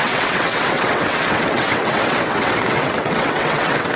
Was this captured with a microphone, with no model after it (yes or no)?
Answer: no